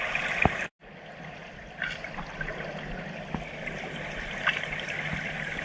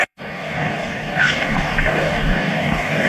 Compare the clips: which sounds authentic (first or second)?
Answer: first